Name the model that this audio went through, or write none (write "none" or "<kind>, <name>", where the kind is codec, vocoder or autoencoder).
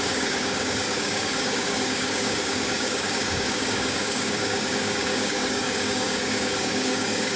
codec, DAC